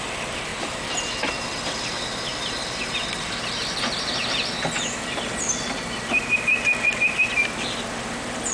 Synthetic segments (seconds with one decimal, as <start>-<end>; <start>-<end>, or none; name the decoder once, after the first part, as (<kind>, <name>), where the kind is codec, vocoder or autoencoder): none